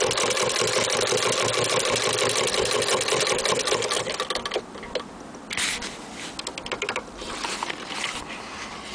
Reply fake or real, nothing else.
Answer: real